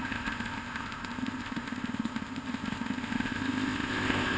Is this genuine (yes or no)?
no